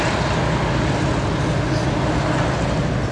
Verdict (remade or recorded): recorded